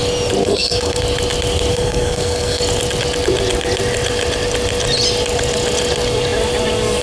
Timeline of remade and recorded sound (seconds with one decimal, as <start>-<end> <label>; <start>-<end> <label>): 0.0-0.4 recorded; 0.4-1.0 remade; 1.0-1.7 recorded; 1.7-2.6 remade; 2.6-7.0 recorded